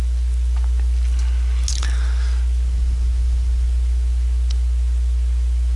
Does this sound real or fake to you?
real